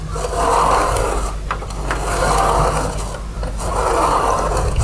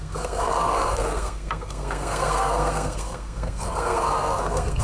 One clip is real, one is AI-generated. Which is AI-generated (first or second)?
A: second